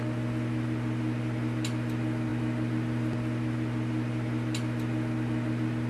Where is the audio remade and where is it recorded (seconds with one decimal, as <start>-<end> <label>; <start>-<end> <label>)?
0.0-5.9 recorded